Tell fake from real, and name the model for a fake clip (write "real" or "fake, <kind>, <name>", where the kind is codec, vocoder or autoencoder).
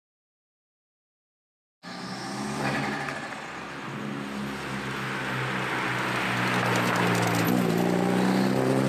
real